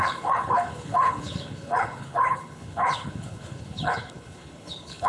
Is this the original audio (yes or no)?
no